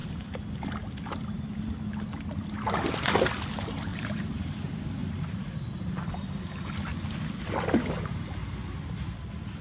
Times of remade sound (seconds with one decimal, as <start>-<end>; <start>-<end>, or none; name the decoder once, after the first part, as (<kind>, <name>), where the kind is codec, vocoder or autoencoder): 3.9-4.6 (vocoder, BigVGAN v2); 5.0-5.9